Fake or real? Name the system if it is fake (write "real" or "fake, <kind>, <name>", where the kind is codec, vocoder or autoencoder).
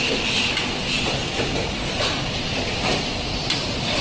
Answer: real